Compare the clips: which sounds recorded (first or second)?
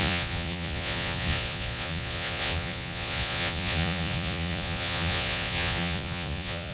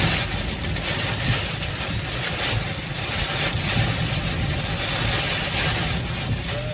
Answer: second